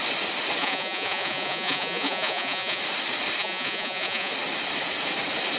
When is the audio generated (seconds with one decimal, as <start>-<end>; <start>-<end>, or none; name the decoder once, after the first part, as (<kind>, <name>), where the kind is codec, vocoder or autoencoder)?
0.6-2.8 (vocoder, Vocos); 3.4-4.3